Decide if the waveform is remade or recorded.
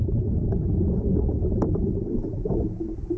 recorded